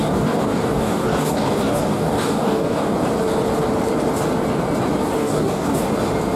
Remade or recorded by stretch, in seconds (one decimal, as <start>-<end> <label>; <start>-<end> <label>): 0.0-2.9 remade; 2.9-5.2 recorded; 5.2-5.9 remade; 5.9-6.4 recorded